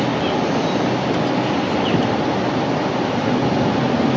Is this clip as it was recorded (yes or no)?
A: yes